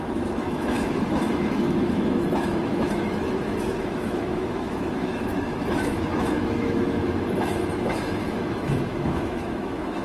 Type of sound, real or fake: fake